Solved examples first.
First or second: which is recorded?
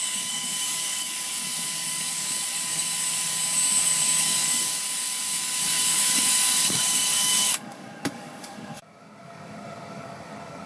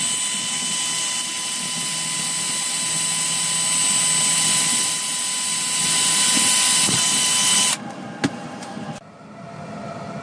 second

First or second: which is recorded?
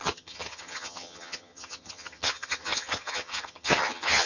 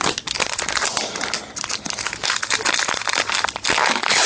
second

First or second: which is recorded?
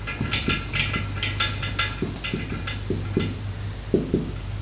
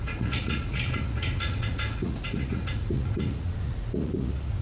first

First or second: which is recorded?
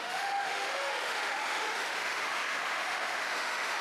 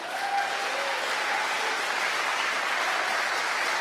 second